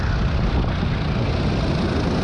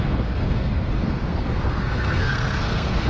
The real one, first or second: first